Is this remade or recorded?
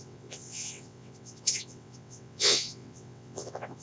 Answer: remade